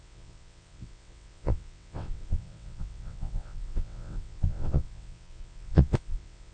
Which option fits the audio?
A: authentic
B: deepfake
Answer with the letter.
B